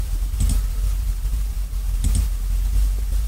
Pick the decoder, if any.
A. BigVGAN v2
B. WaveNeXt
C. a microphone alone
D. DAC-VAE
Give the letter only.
A